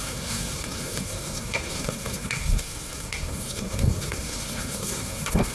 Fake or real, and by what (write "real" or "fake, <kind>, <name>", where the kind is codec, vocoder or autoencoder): fake, codec, SNAC